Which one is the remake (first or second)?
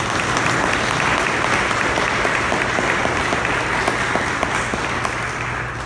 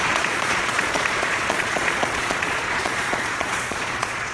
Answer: second